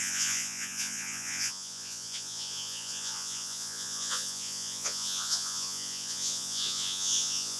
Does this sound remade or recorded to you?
remade